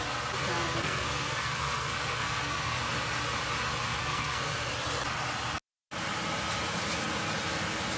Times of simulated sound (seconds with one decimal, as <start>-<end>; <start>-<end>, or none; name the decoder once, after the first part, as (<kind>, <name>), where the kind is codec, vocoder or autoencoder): 0.5-2.8 (codec, SNAC); 4.0-4.7